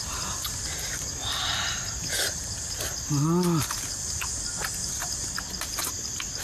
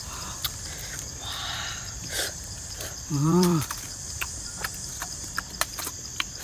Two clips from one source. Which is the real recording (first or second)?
first